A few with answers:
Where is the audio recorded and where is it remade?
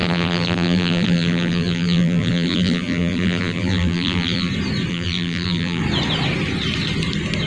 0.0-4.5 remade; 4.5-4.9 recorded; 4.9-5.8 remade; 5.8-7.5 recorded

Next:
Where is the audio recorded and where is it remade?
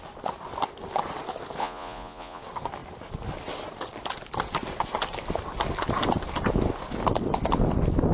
0.0-1.6 recorded; 1.6-2.4 remade; 2.4-8.1 recorded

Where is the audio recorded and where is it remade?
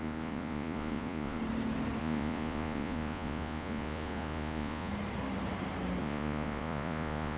0.0-1.4 remade; 1.4-2.0 recorded; 2.0-4.9 remade; 4.9-6.0 recorded; 6.0-7.4 remade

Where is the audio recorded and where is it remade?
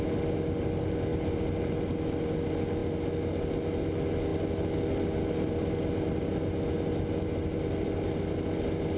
0.0-9.0 recorded